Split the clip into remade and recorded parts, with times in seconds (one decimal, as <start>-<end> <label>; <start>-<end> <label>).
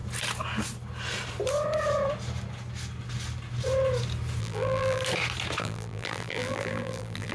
0.0-4.4 recorded; 4.4-5.0 remade; 5.0-5.6 recorded; 5.6-7.3 remade